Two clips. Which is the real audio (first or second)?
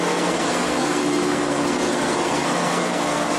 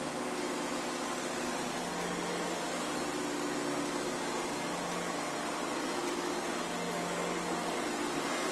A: second